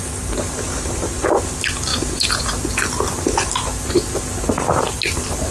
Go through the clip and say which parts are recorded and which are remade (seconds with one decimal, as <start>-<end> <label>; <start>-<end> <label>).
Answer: 0.0-1.9 recorded; 1.9-2.4 remade; 2.4-5.5 recorded